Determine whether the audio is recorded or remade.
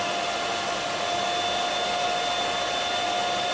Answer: recorded